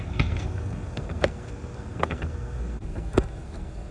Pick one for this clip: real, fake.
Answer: fake